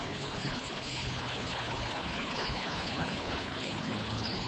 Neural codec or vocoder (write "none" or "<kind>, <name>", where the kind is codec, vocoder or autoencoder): codec, HILCodec